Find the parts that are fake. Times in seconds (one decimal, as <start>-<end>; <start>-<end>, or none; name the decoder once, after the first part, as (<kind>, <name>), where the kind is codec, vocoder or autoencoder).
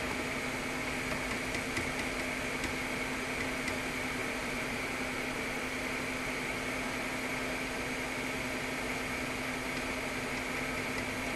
4.2-5.5 (vocoder, BigVGAN v2)